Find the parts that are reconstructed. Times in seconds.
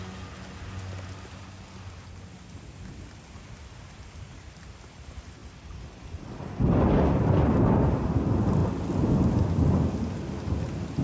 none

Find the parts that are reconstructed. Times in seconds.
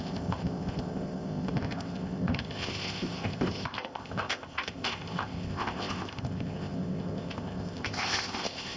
0.0-8.8 (codec, ZipCodec)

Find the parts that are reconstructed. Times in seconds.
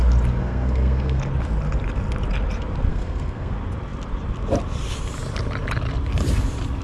0.4-1.2 (codec, SNAC); 2.9-3.5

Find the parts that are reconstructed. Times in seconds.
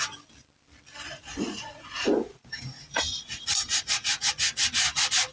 1.1-4.3 (vocoder, Vocos)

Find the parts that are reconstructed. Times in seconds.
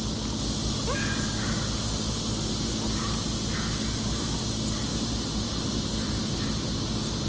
4.9-6.5 (vocoder, BigVGAN v2)